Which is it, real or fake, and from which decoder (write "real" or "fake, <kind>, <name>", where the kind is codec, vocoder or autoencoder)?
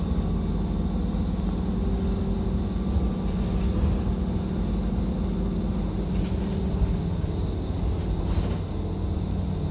real